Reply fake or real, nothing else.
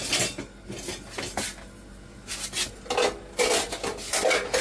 real